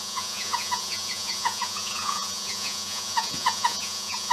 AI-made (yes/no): yes